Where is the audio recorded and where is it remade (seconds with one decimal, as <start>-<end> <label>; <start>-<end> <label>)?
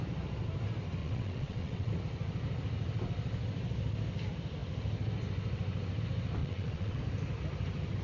0.0-1.0 recorded; 1.0-1.9 remade; 1.9-6.4 recorded; 6.4-7.0 remade; 7.0-8.0 recorded